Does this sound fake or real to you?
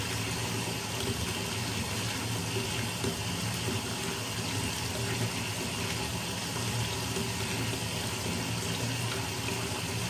real